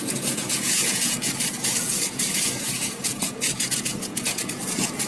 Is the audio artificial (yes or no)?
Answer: yes